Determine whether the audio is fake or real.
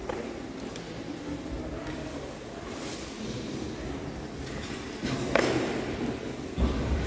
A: real